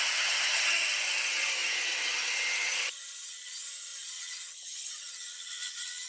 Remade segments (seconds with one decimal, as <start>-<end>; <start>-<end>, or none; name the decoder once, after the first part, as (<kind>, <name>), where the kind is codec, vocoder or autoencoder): 0.0-6.1 (vocoder, HiFi-GAN)